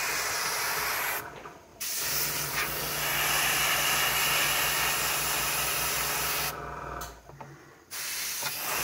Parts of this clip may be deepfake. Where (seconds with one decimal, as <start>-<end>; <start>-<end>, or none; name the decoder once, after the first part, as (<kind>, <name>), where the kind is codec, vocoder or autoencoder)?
none